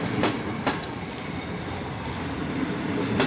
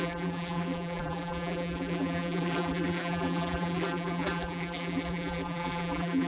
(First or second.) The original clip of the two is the first